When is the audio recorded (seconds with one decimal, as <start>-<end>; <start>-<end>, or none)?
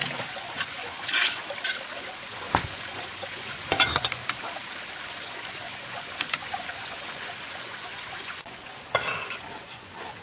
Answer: 1.4-1.9; 4.2-5.0